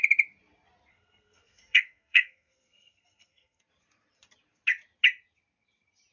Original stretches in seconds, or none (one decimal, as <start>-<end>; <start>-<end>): 0.0-0.9; 3.6-6.1